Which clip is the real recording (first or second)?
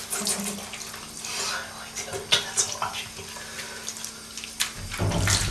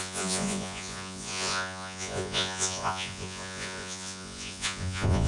first